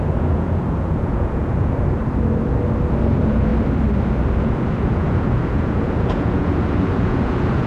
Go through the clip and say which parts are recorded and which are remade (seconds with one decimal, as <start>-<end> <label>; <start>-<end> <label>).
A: 0.0-2.0 remade; 2.0-3.0 recorded; 3.0-3.5 remade; 3.5-4.4 recorded; 4.4-7.7 remade